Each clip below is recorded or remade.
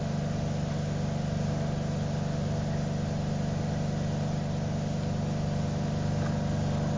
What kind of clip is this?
recorded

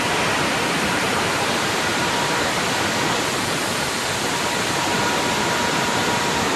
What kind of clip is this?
recorded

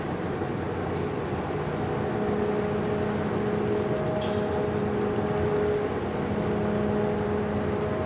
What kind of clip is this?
recorded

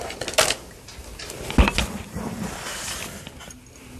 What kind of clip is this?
recorded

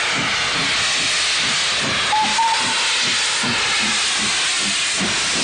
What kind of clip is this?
recorded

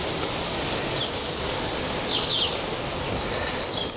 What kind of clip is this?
recorded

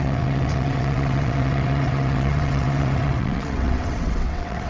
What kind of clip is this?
remade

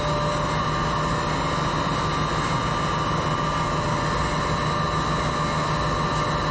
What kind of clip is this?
recorded